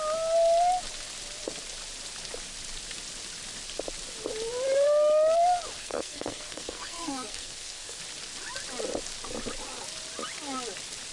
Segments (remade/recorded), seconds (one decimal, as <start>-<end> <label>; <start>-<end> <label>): 0.0-5.8 recorded; 5.8-8.0 remade; 8.0-11.1 recorded